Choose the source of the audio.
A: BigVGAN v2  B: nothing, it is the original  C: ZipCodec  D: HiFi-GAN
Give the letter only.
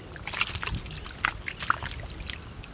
B